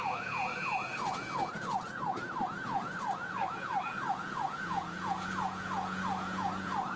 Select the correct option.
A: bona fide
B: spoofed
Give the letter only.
B